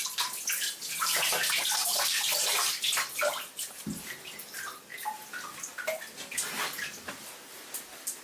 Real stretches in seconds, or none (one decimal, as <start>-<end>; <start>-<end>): 0.0-8.2

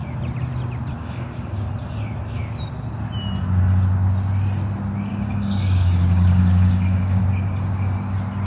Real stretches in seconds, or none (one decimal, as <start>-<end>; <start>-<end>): 0.0-0.9; 1.7-5.1; 7.2-8.5

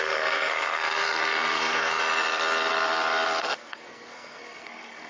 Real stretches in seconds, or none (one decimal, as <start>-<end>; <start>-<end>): 2.0-3.4